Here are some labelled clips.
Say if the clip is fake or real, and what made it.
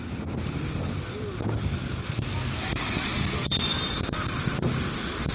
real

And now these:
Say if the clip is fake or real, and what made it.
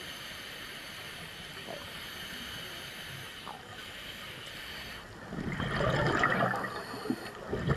real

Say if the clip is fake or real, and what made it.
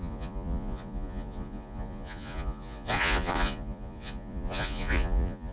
fake, vocoder, Vocos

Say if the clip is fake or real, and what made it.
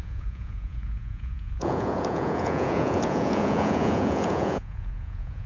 fake, vocoder, Vocos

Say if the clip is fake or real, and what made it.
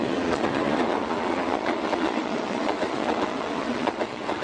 fake, vocoder, Vocos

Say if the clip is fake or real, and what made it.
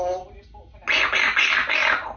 real